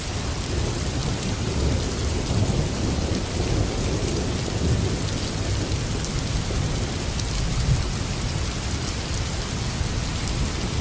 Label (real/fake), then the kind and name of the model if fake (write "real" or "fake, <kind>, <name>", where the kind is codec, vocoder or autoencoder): real